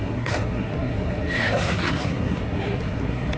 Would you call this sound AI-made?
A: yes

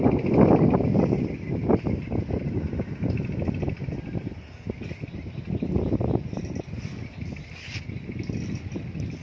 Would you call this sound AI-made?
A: no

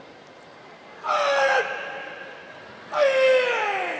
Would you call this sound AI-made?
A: no